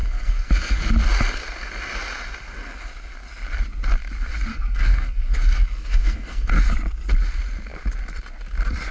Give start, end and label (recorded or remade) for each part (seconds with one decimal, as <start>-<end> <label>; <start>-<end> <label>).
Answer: 0.0-0.5 remade; 0.5-4.5 recorded; 4.5-6.5 remade; 6.5-8.9 recorded